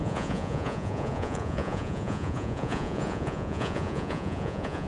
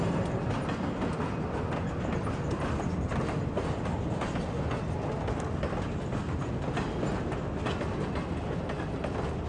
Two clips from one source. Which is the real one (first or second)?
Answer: second